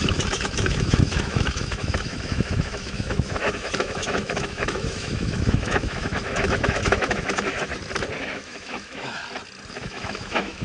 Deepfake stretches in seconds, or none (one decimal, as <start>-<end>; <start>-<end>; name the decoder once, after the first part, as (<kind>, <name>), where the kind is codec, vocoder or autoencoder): 0.0-7.7 (autoencoder, DAC-VAE); 8.2-9.2; 9.7-10.6